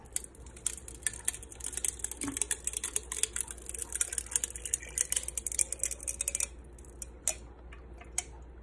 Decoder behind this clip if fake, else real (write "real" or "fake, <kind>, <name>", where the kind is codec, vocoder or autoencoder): real